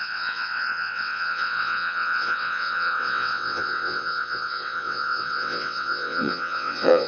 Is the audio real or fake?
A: fake